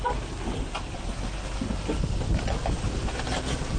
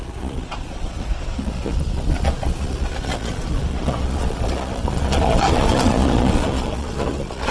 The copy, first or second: second